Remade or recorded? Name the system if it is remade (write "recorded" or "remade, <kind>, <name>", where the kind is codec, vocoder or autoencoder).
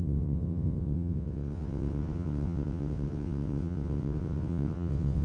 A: remade, vocoder, WaveNeXt